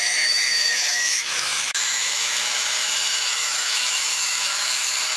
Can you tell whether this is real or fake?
fake